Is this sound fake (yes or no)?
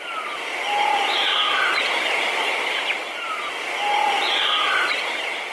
no